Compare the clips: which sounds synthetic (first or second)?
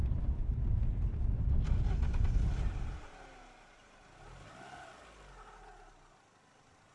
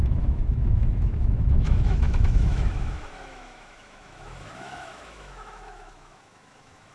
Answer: second